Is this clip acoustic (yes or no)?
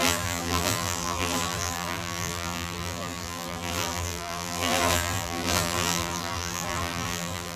no